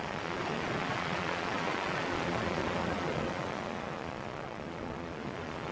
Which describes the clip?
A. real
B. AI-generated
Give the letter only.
B